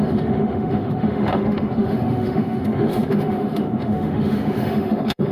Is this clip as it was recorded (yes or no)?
no